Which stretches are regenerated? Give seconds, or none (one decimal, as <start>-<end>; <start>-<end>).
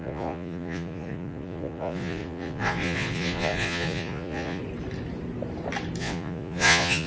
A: 0.0-4.6; 6.0-7.1